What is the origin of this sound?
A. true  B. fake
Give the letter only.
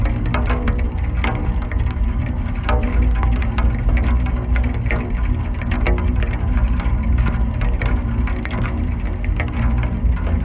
A